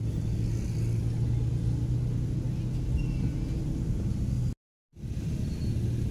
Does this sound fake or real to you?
real